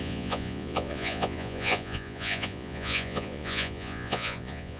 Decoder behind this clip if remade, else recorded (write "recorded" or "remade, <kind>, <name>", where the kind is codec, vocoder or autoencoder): remade, vocoder, Vocos